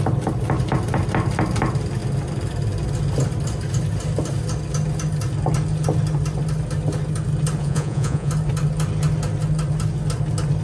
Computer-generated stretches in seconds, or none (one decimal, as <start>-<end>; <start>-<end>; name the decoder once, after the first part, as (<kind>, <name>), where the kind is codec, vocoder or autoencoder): 7.6-8.3 (vocoder, Vocos)